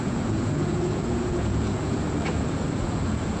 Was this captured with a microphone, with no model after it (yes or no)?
no